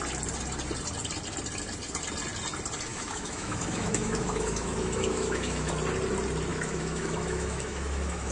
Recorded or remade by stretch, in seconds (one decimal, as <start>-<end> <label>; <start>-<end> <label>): 0.0-2.9 recorded; 2.9-5.7 remade; 5.7-6.5 recorded; 6.5-8.3 remade